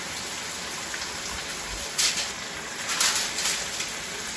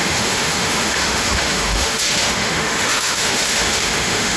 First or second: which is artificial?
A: second